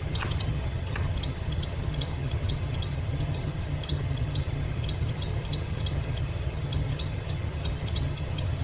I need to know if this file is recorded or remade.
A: remade